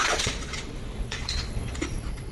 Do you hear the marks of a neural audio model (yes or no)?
yes